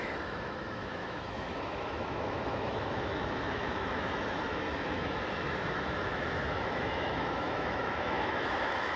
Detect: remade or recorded remade